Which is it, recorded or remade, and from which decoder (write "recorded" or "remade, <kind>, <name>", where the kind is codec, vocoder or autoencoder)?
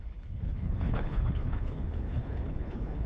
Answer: remade, codec, HILCodec